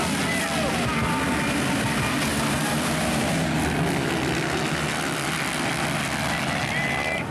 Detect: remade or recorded recorded